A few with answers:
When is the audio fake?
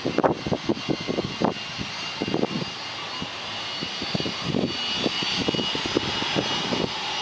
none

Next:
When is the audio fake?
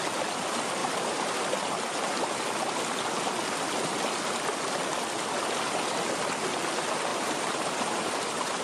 0.8-1.3 (vocoder, BigVGAN v2); 7.1-8.6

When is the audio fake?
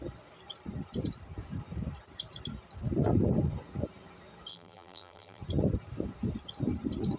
4.5-5.4 (vocoder, BigVGAN v2)